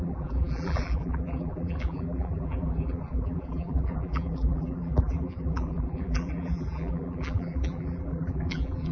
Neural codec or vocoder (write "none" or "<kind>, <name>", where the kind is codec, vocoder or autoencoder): vocoder, BigVGAN v2